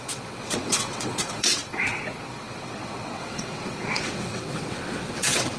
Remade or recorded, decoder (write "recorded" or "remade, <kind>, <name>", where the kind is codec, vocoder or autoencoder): remade, vocoder, WaveNeXt